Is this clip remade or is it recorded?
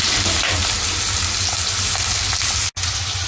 recorded